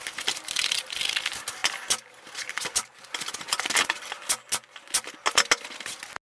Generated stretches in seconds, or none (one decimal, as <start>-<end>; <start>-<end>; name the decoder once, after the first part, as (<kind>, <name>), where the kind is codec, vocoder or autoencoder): none